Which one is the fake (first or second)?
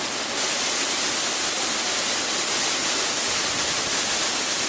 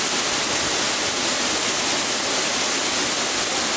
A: first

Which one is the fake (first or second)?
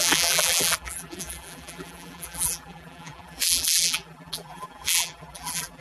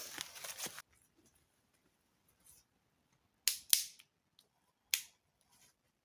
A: first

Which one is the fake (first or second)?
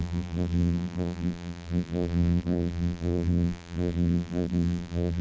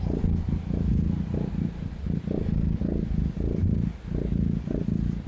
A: first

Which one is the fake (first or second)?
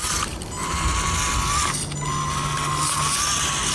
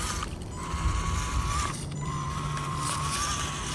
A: second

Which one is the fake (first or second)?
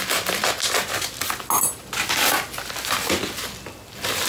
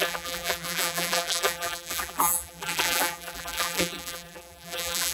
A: second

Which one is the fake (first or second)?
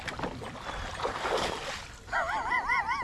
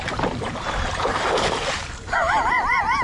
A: second